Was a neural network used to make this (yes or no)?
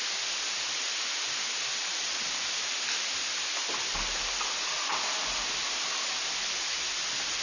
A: no